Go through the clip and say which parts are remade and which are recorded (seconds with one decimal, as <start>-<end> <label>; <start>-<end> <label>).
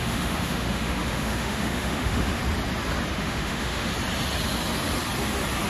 0.0-2.4 remade; 2.4-3.1 recorded; 3.1-3.9 remade; 3.9-5.7 recorded